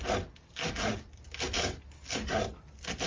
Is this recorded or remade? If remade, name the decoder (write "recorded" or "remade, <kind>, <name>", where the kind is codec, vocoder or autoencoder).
recorded